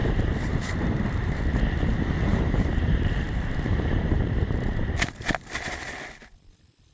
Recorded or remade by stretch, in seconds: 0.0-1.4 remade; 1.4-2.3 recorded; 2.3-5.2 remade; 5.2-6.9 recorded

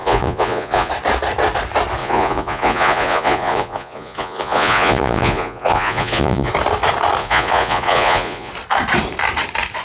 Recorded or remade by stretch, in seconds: 0.0-0.9 remade; 0.9-2.0 recorded; 2.0-6.5 remade; 6.5-7.2 recorded; 7.2-8.5 remade; 8.5-9.8 recorded

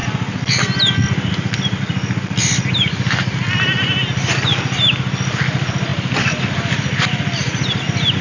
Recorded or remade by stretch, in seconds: 0.0-8.2 recorded

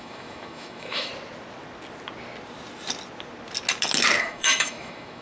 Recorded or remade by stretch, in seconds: 0.0-1.1 remade; 1.1-4.2 recorded; 4.2-5.2 remade

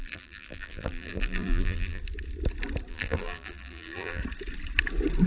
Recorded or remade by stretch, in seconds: 0.0-2.0 remade; 2.0-2.9 recorded; 2.9-4.2 remade; 4.2-5.3 recorded